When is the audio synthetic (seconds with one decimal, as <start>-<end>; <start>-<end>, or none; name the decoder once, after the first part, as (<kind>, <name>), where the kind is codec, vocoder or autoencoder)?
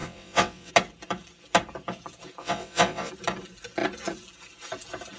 0.0-0.7 (vocoder, WaveNeXt); 2.4-3.1